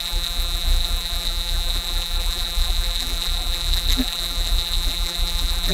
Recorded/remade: remade